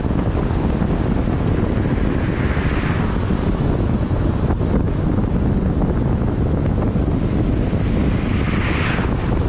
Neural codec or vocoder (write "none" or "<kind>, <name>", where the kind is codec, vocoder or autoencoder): none